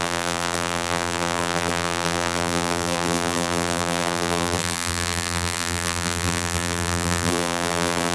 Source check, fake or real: fake